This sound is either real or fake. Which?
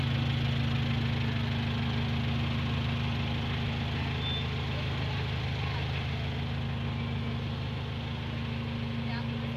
real